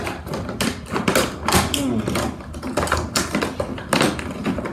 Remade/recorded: recorded